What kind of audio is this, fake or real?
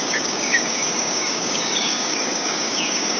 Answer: fake